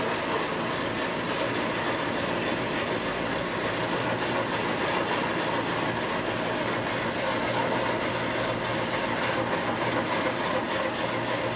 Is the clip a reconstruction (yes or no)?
no